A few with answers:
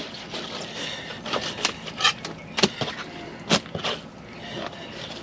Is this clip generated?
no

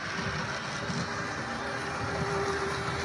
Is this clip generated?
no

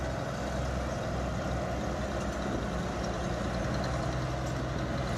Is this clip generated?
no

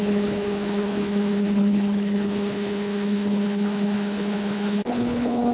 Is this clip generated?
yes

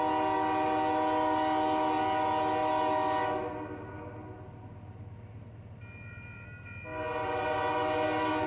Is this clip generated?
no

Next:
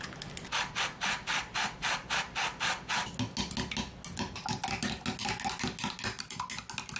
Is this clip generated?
no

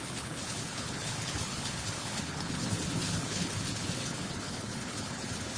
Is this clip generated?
yes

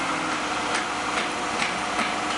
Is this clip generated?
no